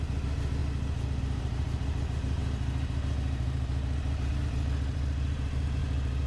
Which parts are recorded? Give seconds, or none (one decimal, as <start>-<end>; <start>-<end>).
0.6-1.2